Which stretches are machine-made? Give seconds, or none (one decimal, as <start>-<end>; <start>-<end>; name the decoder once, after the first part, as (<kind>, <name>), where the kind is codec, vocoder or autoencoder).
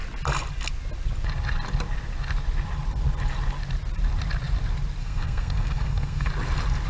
5.0-6.3 (codec, SNAC)